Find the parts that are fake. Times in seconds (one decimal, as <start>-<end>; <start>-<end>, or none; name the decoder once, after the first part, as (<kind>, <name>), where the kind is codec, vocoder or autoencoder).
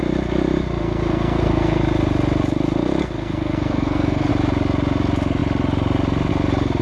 0.8-1.8 (codec, SNAC); 3.0-4.3